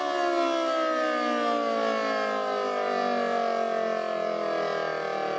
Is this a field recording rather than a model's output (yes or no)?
yes